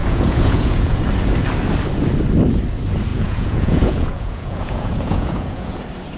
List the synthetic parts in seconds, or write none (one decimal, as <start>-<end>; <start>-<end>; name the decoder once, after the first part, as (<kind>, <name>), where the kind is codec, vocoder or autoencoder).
0.0-1.0 (vocoder, Vocos); 3.1-5.8